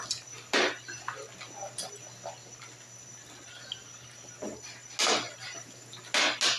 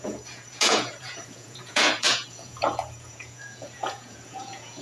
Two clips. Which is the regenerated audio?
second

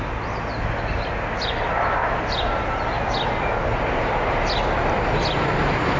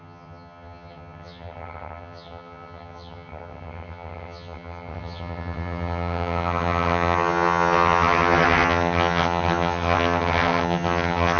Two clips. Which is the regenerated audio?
second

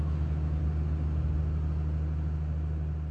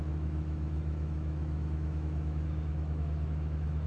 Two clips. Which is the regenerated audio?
second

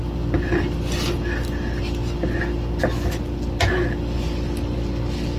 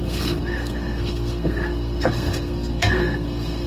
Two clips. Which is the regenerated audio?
second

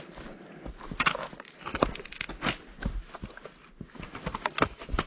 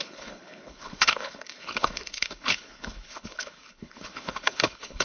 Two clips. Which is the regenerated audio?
second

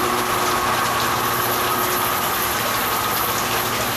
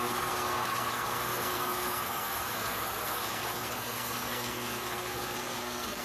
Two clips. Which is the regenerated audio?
second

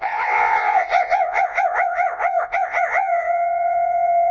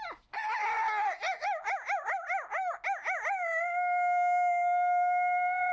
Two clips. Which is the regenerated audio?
first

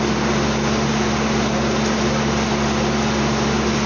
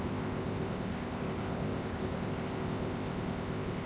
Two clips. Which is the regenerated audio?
second